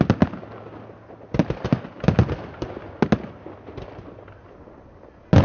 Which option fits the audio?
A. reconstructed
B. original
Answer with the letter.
B